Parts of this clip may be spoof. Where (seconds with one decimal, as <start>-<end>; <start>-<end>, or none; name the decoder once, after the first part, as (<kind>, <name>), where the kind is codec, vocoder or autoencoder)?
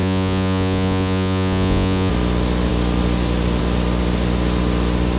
0.0-2.1 (vocoder, Vocos)